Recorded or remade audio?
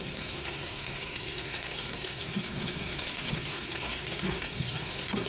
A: remade